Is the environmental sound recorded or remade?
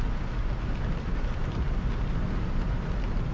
recorded